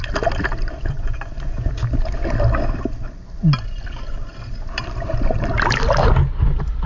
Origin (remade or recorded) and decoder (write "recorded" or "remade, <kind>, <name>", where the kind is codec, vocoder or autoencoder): recorded